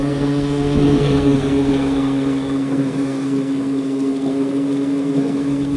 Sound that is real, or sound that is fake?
fake